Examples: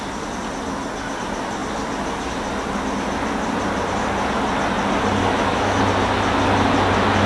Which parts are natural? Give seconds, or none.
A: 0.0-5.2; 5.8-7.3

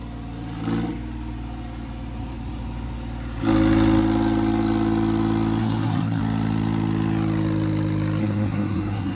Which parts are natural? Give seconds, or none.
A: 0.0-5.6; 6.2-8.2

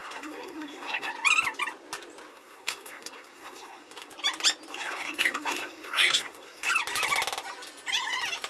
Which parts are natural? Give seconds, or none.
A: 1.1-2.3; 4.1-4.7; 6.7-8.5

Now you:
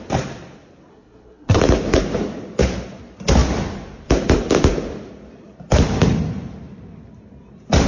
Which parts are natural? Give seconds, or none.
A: 0.0-0.9; 1.6-7.9